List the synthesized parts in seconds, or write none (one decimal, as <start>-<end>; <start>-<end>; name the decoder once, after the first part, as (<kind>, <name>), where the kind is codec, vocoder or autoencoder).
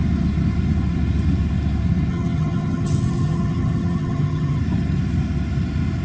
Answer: 2.1-4.6 (vocoder, HiFi-GAN)